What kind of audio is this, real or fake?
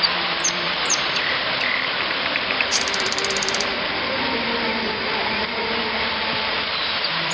fake